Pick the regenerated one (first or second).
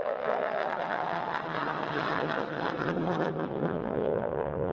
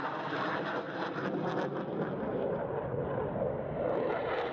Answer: first